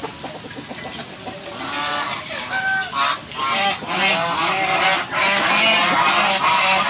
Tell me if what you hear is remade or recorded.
recorded